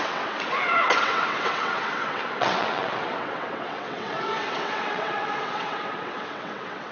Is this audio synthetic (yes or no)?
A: yes